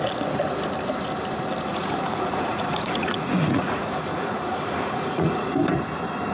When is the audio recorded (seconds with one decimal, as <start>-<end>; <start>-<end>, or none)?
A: 0.0-1.7; 5.5-6.3